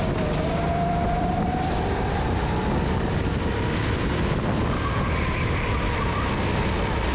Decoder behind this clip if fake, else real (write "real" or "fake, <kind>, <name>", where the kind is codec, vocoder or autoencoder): real